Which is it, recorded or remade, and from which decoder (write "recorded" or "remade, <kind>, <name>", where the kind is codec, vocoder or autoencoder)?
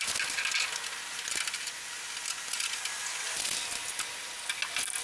recorded